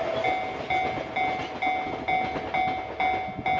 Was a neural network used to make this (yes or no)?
no